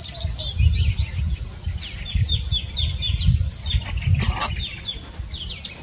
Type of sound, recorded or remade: recorded